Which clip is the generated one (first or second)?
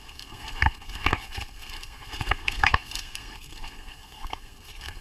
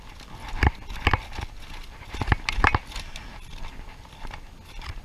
first